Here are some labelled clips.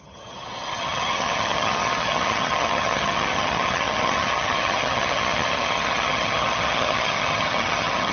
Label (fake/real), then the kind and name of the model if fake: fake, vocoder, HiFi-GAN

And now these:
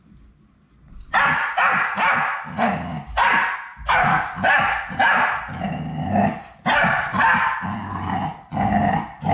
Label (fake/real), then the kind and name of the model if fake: real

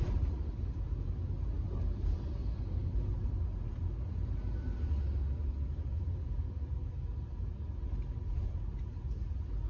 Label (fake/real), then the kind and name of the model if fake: real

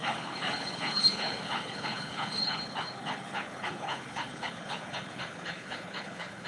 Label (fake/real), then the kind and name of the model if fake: fake, codec, HILCodec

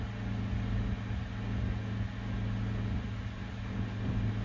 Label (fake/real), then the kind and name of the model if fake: real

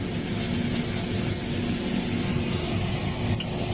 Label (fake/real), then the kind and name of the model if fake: real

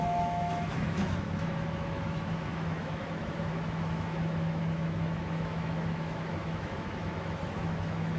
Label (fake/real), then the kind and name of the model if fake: fake, autoencoder, DAC-VAE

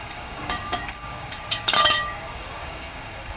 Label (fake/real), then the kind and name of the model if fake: fake, codec, DAC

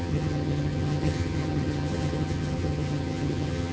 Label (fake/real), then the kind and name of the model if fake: fake, vocoder, HiFi-GAN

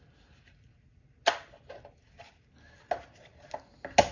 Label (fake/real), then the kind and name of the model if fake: real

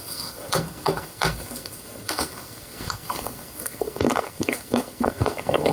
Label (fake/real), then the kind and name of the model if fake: fake, codec, SNAC